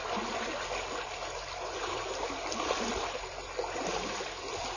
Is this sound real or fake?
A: real